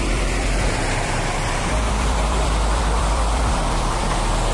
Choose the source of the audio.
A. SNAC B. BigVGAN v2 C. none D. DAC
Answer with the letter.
B